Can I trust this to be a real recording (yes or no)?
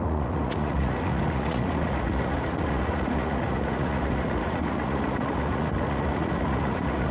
no